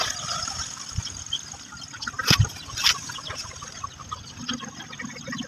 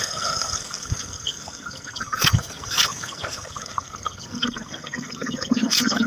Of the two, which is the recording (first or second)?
first